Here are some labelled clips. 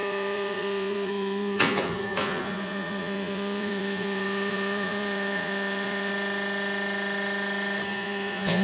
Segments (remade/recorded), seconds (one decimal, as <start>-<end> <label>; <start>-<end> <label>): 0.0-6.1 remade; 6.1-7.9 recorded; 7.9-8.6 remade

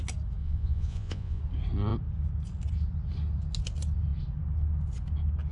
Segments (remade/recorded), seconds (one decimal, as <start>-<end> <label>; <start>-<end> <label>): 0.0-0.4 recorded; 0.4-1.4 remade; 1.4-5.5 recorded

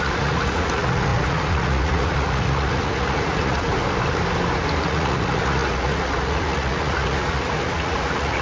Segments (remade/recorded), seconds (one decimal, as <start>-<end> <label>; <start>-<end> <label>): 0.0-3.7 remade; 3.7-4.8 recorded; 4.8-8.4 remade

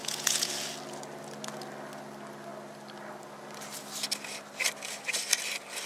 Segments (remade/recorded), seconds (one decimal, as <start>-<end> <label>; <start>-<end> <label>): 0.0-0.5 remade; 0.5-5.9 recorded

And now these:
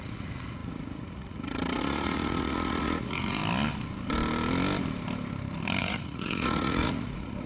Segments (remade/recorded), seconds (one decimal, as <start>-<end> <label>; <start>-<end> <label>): 0.0-3.4 remade; 3.4-5.8 recorded; 5.8-7.5 remade

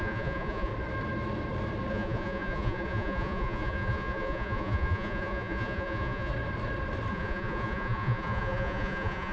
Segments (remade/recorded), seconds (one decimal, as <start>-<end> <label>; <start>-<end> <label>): 0.0-0.7 remade; 0.7-1.9 recorded; 1.9-6.3 remade; 6.3-7.1 recorded; 7.1-9.3 remade